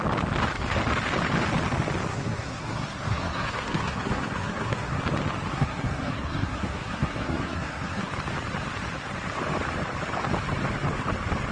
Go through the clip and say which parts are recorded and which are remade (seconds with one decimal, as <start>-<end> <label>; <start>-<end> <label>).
0.0-2.1 recorded; 2.1-5.0 remade; 5.0-5.5 recorded; 5.5-8.1 remade; 8.1-11.5 recorded